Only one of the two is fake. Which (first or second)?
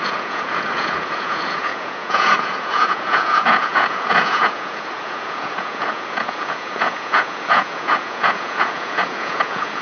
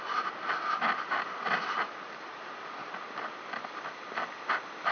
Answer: first